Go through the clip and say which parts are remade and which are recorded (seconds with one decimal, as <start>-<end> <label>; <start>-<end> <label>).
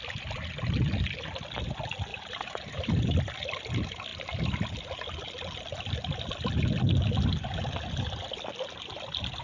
0.0-2.1 recorded; 2.1-3.2 remade; 3.2-9.4 recorded